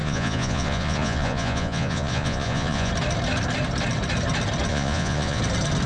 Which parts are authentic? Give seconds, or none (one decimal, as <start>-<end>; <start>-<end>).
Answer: 2.9-4.7; 5.4-5.9

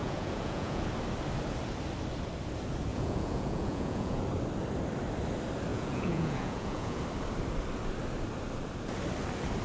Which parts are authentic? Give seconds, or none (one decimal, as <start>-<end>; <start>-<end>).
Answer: 0.8-2.9; 4.2-5.7; 7.0-9.6

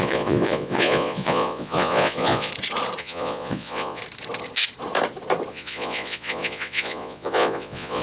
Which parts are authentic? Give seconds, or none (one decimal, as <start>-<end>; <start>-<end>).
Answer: 2.5-3.0; 4.0-5.5

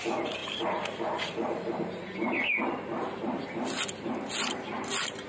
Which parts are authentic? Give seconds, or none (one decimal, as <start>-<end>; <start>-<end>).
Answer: 0.0-5.3

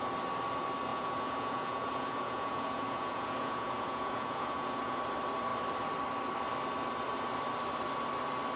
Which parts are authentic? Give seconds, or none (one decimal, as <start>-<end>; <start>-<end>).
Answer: 0.0-0.9; 5.0-8.6

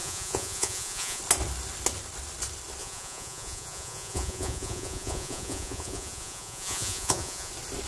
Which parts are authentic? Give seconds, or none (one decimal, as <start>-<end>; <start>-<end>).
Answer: 1.2-2.8; 7.5-7.9

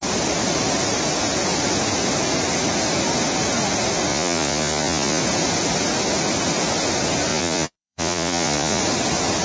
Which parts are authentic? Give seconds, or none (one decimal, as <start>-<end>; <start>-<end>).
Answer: 0.0-4.1; 5.2-7.3; 8.8-9.4

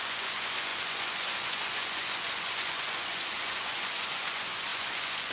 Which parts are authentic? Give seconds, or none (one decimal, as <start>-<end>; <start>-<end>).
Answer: none